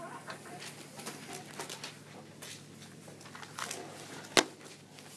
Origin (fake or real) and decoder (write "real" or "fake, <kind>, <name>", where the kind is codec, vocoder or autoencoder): real